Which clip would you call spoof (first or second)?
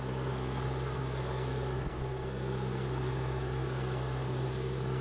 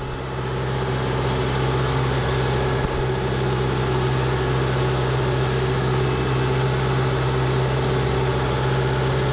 first